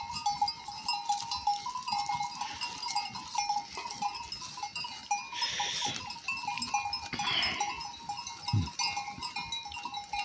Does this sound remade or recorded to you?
recorded